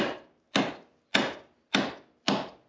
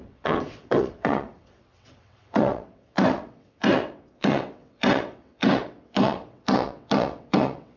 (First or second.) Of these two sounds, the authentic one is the first